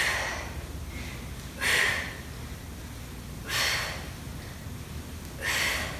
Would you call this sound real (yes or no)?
yes